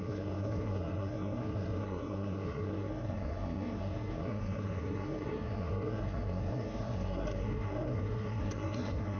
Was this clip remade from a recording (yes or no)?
yes